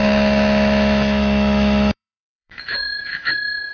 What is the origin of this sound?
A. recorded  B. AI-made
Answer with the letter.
B